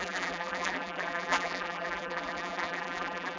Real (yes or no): no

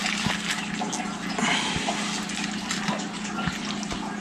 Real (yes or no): yes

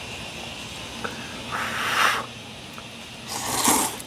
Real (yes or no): yes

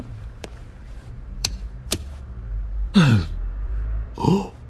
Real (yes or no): no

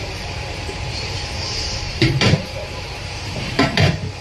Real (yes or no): no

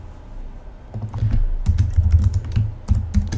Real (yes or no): yes